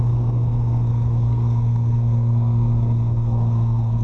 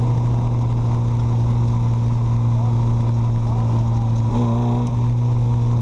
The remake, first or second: first